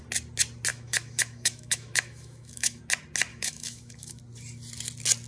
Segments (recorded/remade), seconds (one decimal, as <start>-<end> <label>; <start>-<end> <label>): 0.0-0.7 recorded; 0.7-2.8 remade; 2.8-3.3 recorded; 3.3-4.2 remade; 4.2-5.3 recorded